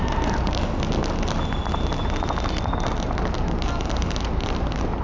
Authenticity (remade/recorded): recorded